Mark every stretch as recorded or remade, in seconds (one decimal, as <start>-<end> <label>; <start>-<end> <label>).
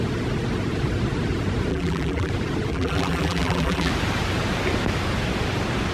0.0-1.7 recorded; 1.7-2.3 remade; 2.3-2.7 recorded; 2.7-3.9 remade; 3.9-5.9 recorded